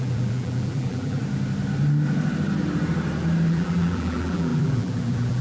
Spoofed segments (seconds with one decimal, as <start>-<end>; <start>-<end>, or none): 0.0-1.2; 3.5-5.4